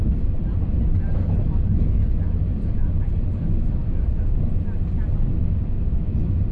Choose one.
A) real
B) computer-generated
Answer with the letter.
A